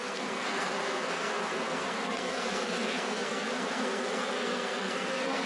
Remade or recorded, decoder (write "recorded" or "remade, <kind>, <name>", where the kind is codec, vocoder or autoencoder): remade, codec, SNAC